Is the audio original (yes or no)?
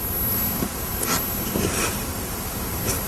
yes